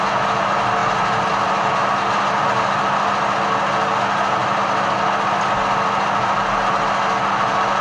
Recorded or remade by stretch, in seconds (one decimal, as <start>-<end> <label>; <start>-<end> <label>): 0.0-0.8 recorded; 0.8-1.7 remade; 1.7-7.8 recorded